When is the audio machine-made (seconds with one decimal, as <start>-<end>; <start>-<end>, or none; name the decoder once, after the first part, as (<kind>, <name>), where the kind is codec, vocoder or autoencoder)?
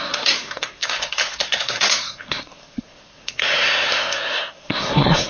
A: 0.0-5.3 (codec, SNAC)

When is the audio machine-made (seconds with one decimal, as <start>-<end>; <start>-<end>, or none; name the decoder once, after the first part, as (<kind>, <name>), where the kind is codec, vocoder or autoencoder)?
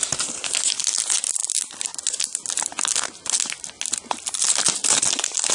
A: none